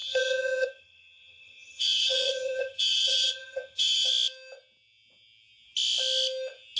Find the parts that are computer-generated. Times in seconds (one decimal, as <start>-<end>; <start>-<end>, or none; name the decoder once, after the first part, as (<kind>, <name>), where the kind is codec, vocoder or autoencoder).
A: 0.0-4.1 (vocoder, HiFi-GAN)